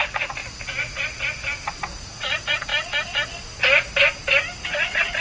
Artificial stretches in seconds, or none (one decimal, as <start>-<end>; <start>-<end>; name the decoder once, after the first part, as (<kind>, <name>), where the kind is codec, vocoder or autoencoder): 0.0-0.4 (vocoder, Vocos); 1.9-2.7; 4.8-5.2